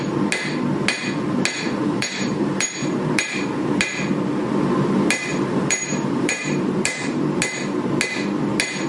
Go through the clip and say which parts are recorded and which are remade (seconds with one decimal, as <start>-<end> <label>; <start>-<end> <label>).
0.0-1.8 recorded; 1.8-2.9 remade; 2.9-5.3 recorded; 5.3-7.4 remade; 7.4-8.9 recorded